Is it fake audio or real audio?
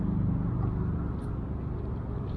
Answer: real